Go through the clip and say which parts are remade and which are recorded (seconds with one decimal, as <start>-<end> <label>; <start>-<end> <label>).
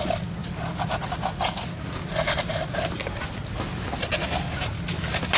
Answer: 0.0-5.4 recorded